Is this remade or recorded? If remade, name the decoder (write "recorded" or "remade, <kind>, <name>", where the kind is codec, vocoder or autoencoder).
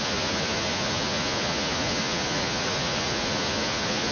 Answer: remade, vocoder, Vocos